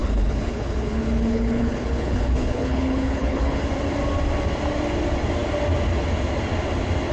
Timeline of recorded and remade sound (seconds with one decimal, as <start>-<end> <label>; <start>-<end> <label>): 0.0-3.6 remade; 3.6-7.1 recorded